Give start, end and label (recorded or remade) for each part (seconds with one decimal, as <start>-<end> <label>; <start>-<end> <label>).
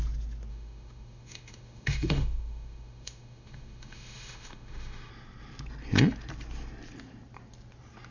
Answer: 0.0-0.5 recorded; 0.5-5.1 remade; 5.1-8.1 recorded